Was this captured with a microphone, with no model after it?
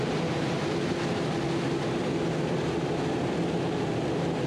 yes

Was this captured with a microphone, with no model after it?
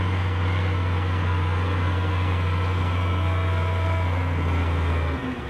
no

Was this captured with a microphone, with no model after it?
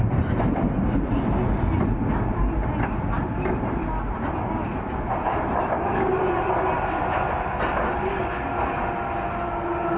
yes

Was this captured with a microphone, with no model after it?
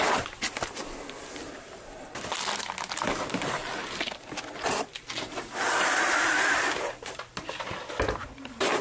no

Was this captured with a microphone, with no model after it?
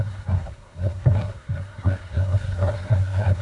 no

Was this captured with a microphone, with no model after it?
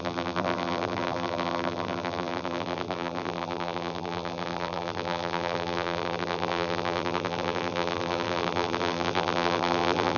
no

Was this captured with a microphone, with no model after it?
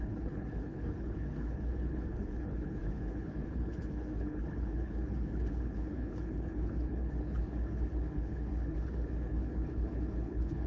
no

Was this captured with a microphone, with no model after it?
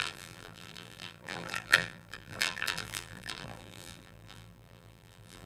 no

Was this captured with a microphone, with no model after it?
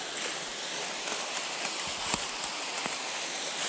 yes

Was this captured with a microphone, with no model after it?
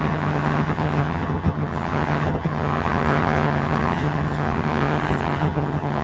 no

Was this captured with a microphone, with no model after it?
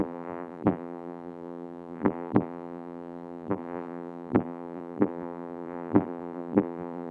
no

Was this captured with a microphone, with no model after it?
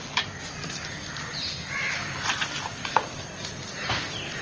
yes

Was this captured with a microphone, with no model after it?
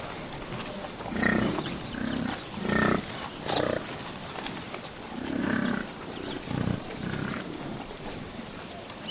no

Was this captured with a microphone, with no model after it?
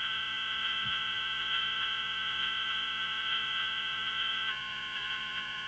no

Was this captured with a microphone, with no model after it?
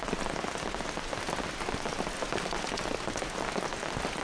yes